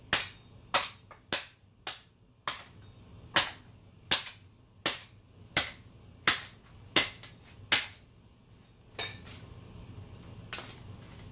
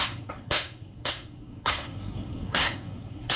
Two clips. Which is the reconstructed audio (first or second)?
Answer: second